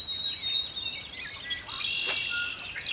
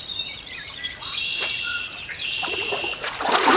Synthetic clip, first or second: second